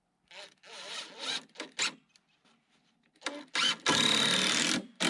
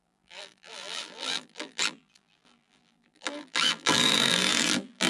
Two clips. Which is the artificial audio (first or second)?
second